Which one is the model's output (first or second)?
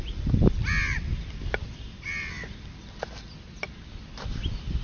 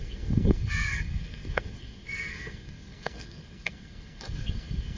second